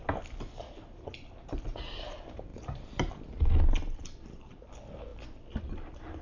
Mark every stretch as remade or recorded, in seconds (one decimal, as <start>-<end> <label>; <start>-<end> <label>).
0.0-2.5 recorded; 2.5-3.1 remade; 3.1-6.2 recorded